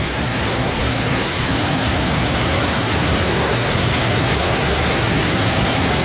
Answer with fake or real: fake